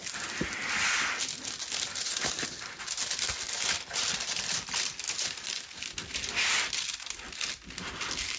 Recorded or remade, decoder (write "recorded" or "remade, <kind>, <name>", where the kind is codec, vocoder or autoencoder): recorded